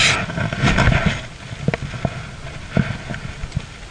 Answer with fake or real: real